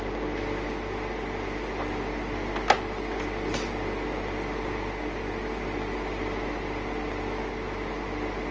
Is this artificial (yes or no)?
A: no